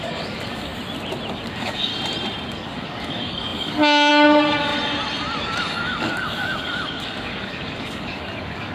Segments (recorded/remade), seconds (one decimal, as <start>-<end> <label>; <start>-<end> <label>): 0.0-0.7 remade; 0.7-1.3 recorded; 1.3-1.9 remade; 1.9-2.5 recorded; 2.5-4.7 remade; 4.7-5.4 recorded; 5.4-8.7 remade